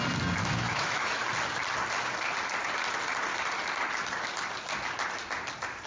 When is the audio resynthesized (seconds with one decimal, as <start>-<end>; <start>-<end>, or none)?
0.4-1.2